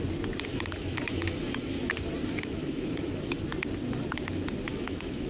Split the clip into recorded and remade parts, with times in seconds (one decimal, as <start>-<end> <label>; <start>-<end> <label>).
0.0-0.5 recorded; 0.5-1.9 remade; 1.9-2.6 recorded; 2.6-3.4 remade; 3.4-4.7 recorded; 4.7-5.3 remade